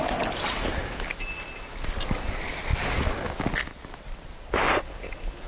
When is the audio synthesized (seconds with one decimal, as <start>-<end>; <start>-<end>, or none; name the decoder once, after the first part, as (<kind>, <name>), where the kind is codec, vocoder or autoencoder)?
none